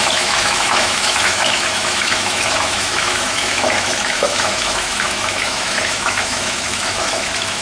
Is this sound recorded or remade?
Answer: remade